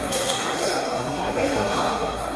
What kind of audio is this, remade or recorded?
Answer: remade